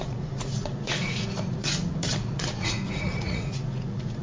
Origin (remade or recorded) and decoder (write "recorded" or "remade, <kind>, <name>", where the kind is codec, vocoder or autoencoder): remade, vocoder, Vocos